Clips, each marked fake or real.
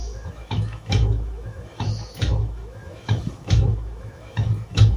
fake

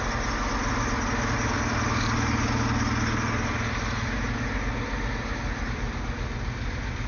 real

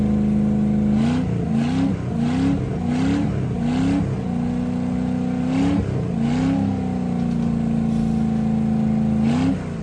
real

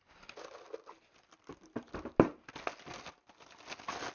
real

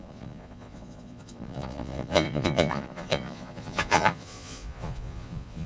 fake